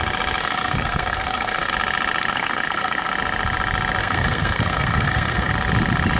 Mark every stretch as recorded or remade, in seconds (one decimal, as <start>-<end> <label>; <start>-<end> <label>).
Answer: 0.0-0.4 recorded; 0.4-1.7 remade; 1.7-2.3 recorded; 2.3-3.1 remade; 3.1-4.0 recorded; 4.0-5.5 remade; 5.5-6.2 recorded